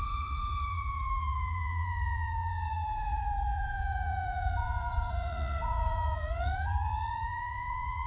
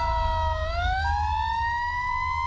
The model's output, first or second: first